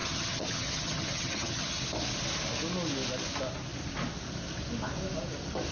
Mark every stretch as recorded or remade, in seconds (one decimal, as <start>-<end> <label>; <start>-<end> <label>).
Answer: 0.0-1.8 remade; 1.8-5.7 recorded